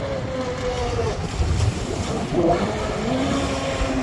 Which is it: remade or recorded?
recorded